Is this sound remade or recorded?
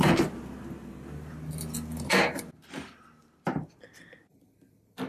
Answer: recorded